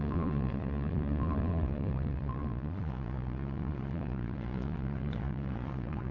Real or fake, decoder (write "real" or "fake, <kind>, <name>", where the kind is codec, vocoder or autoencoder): fake, vocoder, Vocos